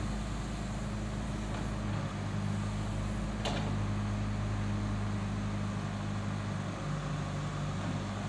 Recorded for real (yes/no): yes